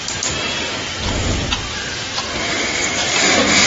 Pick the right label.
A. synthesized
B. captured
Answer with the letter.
A